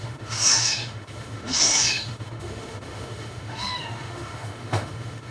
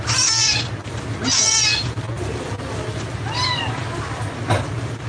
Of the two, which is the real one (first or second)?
second